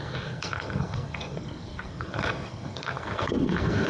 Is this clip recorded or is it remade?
remade